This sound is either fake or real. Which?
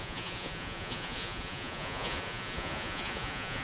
fake